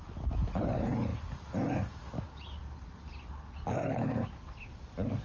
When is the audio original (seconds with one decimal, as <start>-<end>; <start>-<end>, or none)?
0.0-5.2